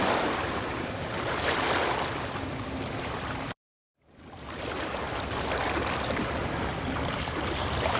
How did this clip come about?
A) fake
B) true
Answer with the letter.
A